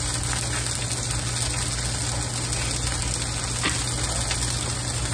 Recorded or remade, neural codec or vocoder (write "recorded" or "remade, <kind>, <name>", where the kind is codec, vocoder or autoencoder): recorded